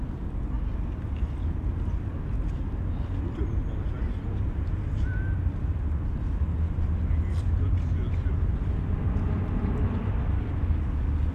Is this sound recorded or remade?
recorded